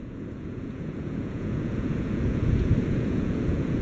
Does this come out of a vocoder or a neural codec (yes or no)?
yes